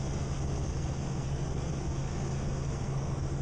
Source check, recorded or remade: remade